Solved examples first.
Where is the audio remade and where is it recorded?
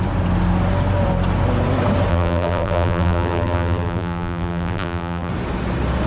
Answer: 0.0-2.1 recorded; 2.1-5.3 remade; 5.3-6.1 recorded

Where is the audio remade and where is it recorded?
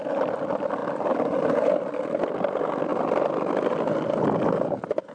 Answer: 0.0-5.1 recorded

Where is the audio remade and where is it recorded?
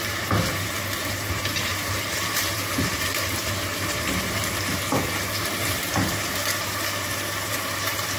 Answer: 0.0-1.7 remade; 1.7-2.3 recorded; 2.3-8.2 remade